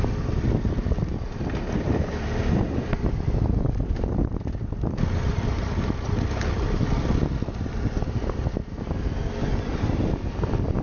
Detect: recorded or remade recorded